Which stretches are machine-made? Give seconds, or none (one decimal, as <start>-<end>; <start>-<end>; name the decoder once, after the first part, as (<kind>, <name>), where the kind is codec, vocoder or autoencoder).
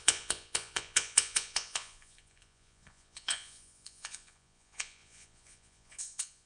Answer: 0.0-6.5 (vocoder, Vocos)